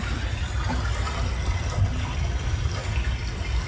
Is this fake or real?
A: real